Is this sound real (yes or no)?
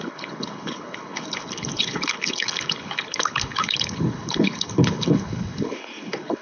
no